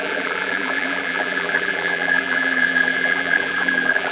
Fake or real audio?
fake